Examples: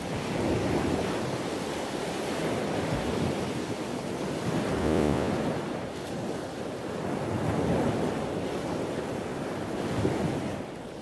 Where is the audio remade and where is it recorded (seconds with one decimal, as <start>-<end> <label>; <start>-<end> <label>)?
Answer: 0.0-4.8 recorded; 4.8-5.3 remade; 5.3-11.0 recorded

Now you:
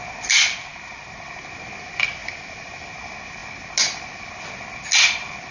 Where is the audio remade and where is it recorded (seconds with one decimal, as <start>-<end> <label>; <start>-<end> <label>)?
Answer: 0.0-5.5 recorded

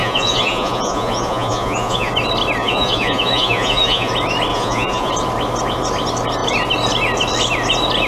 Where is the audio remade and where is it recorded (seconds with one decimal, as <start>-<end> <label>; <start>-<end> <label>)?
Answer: 0.0-2.1 remade; 2.1-2.6 recorded; 2.6-4.1 remade; 4.1-4.5 recorded; 4.5-5.1 remade; 5.1-8.1 recorded